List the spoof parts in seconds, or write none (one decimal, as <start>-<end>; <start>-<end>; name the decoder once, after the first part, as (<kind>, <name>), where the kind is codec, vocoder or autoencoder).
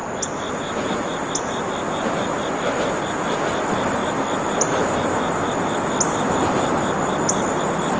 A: none